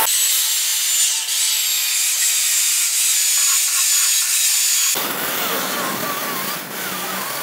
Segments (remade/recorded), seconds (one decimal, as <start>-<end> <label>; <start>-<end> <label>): 0.0-7.4 recorded